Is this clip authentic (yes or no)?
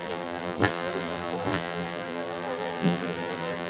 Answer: no